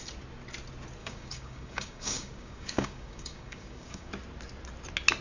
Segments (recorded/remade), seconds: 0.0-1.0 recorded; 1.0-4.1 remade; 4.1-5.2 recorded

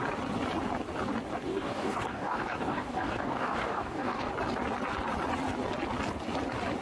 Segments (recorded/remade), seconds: 0.0-1.5 recorded; 1.5-4.3 remade; 4.3-6.8 recorded

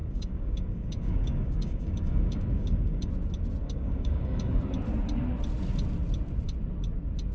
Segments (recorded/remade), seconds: 0.0-3.1 remade; 3.1-3.6 recorded; 3.6-4.6 remade; 4.6-7.3 recorded

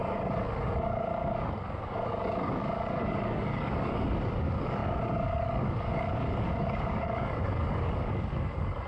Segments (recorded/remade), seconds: 0.0-8.9 remade